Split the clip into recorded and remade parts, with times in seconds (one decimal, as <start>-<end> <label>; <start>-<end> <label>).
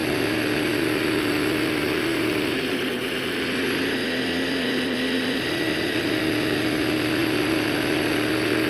0.0-2.1 recorded; 2.1-6.2 remade; 6.2-8.7 recorded